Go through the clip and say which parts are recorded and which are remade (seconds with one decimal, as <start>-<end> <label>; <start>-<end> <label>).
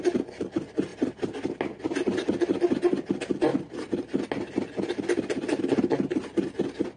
0.0-7.0 recorded